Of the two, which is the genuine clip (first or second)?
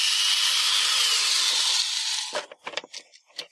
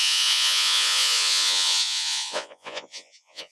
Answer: first